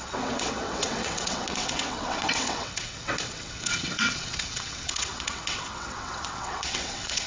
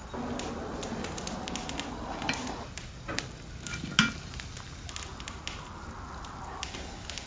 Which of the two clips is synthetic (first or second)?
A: first